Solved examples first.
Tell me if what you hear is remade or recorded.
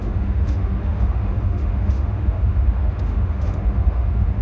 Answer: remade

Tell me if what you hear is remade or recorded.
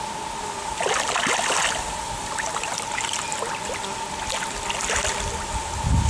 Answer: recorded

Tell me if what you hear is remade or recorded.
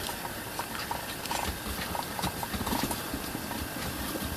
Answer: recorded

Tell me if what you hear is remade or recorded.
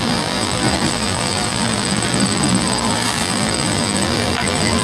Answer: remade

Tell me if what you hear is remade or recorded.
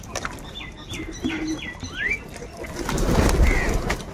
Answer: recorded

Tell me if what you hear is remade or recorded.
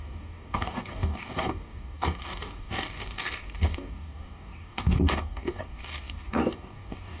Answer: remade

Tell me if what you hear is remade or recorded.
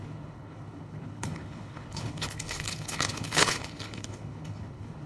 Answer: remade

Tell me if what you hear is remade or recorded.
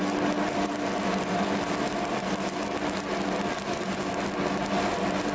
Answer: recorded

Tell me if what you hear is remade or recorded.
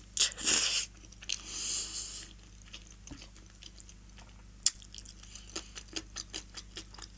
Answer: recorded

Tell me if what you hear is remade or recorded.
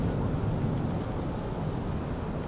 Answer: recorded